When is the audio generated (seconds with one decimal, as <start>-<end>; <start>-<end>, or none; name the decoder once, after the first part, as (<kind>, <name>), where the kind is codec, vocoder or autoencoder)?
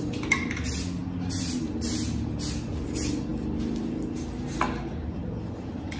none